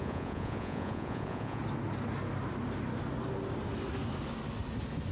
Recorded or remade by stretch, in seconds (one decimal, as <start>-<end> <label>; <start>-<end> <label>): 0.0-1.6 remade; 1.6-5.1 recorded